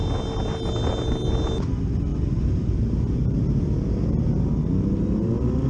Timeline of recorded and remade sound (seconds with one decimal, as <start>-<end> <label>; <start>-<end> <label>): 0.0-5.7 recorded